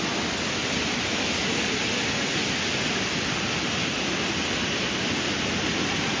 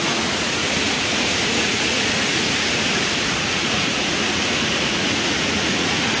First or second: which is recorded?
first